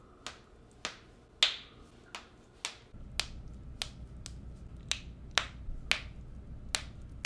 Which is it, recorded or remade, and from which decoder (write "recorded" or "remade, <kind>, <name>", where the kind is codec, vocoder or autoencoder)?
recorded